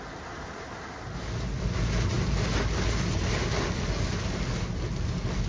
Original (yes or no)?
yes